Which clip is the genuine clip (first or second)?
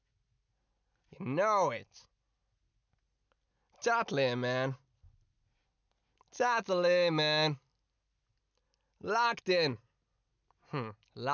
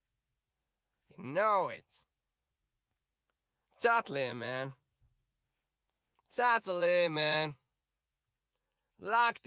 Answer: first